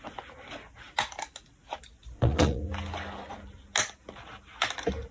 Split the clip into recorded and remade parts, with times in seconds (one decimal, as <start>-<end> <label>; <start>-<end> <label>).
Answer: 0.0-2.0 recorded; 2.0-2.6 remade; 2.6-5.1 recorded